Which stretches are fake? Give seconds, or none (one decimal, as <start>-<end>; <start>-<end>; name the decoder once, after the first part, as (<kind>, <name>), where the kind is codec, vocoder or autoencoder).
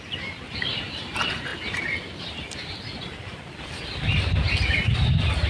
none